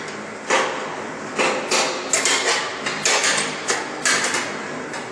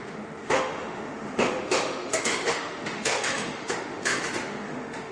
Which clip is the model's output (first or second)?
second